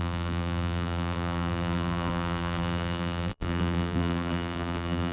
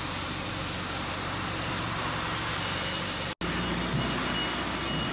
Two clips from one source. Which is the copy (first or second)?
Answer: first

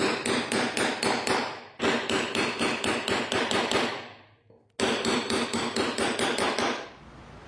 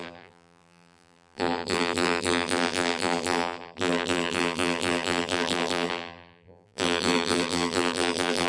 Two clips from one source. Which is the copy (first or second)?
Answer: second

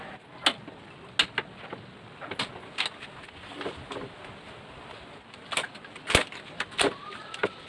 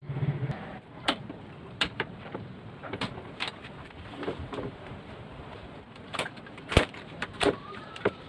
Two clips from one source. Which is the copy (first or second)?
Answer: second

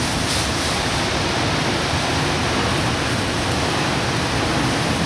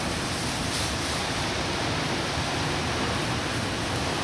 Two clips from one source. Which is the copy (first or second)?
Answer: second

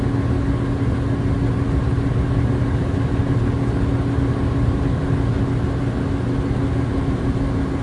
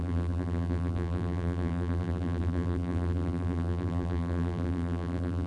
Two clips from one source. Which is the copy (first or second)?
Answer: second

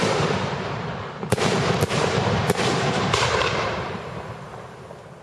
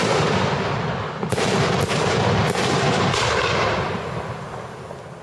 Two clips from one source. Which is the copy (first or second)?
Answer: first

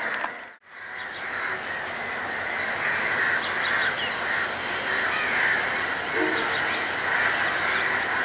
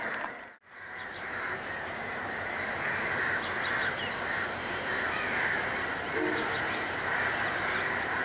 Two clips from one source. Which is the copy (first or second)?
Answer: second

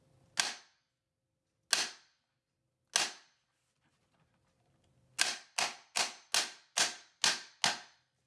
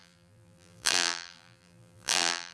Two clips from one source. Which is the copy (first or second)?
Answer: second